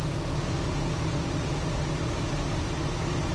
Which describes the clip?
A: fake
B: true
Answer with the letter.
B